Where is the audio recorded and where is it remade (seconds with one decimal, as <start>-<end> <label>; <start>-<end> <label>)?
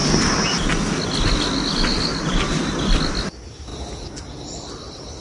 0.0-5.2 recorded